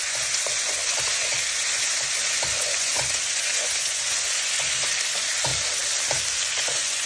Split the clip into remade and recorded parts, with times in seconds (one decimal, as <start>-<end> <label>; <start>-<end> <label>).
0.0-5.5 remade; 5.5-6.5 recorded; 6.5-7.1 remade